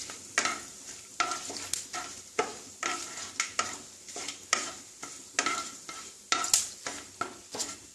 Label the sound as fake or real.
real